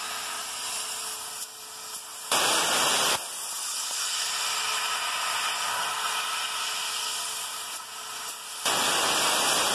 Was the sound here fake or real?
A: real